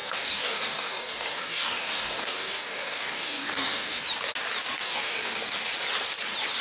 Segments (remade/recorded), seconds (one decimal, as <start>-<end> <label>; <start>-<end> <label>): 0.0-4.0 remade; 4.0-4.8 recorded; 4.8-5.4 remade; 5.4-6.6 recorded